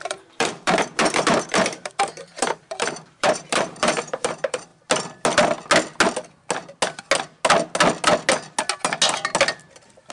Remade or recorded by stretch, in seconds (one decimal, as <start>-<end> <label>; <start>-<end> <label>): 0.0-4.7 remade; 4.7-10.1 recorded

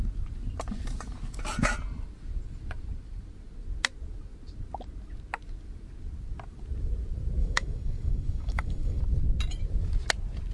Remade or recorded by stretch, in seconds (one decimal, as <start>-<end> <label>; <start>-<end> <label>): 0.0-7.4 recorded; 7.4-9.0 remade; 9.0-10.5 recorded

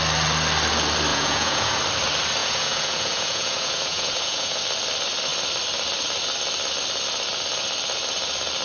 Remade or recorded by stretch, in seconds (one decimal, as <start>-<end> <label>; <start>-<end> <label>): 0.0-1.1 recorded; 1.1-1.8 remade; 1.8-2.4 recorded; 2.4-4.6 remade; 4.6-8.6 recorded